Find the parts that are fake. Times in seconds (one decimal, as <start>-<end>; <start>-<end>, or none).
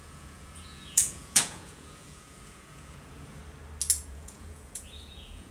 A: 0.0-3.4; 4.0-5.5